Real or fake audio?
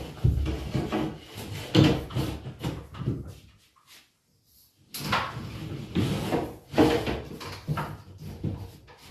real